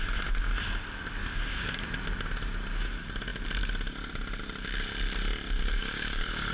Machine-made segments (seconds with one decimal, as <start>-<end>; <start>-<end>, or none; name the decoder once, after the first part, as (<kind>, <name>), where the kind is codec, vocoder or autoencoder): 1.2-1.9 (codec, DAC); 5.8-6.5